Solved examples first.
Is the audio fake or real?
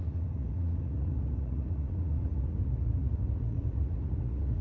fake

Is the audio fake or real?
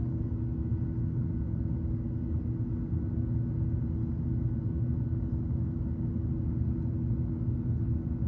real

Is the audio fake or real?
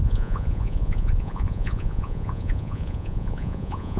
fake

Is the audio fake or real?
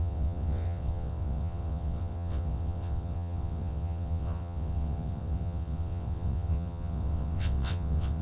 fake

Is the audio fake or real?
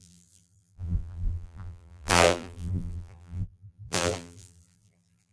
fake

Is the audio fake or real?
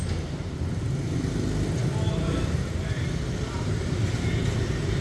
real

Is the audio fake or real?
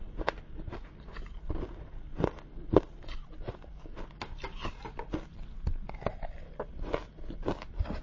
real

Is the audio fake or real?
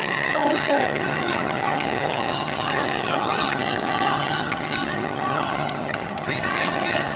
fake